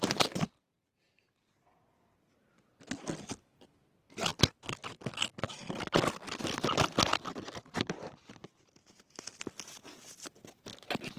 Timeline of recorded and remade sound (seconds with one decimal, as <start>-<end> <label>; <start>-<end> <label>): 0.0-11.2 recorded